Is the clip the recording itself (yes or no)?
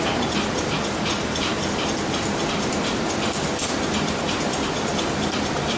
yes